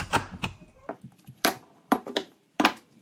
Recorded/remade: remade